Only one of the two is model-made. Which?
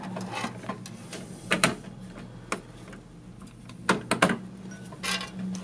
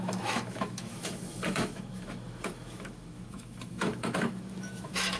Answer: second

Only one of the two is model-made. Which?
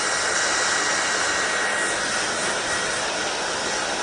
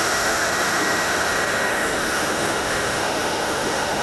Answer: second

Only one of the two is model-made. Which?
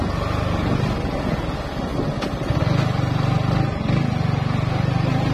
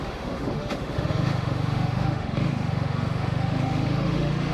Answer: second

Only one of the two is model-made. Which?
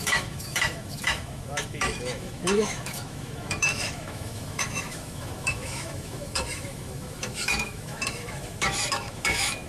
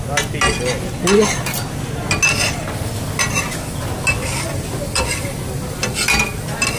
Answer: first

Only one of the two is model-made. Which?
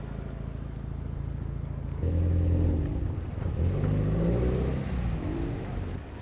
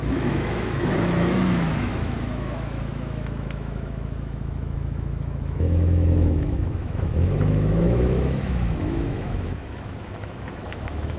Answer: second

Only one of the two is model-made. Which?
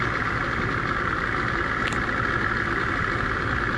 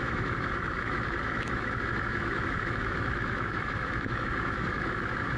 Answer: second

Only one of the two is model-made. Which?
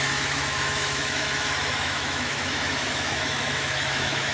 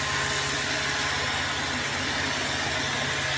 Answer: first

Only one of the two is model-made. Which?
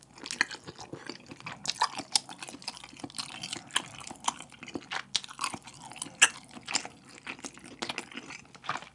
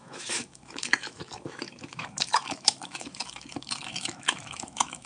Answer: second